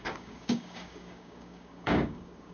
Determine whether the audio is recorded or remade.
remade